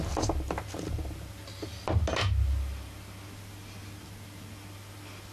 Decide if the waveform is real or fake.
real